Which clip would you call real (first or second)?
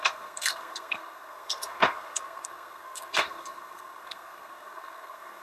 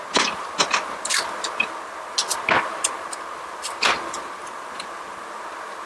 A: second